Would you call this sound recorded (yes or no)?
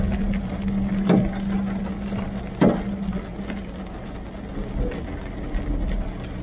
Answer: yes